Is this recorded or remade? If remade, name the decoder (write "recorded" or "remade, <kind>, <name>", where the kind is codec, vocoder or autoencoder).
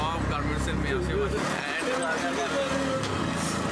recorded